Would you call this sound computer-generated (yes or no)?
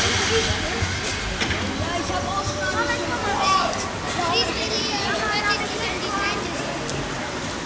no